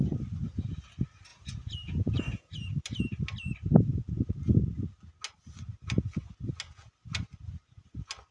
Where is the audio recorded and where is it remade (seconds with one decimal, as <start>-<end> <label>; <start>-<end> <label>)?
0.0-1.3 recorded; 1.3-2.7 remade; 2.7-8.3 recorded

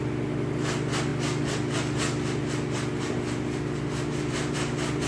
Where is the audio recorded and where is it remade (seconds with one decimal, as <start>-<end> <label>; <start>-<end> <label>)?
0.0-5.1 recorded